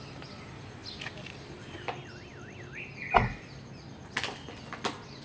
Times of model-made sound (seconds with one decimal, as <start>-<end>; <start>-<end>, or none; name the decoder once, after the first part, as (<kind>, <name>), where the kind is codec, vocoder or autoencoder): none